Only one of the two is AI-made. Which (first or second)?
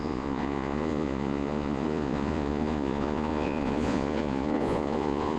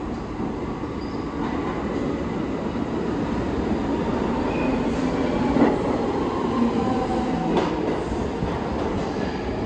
first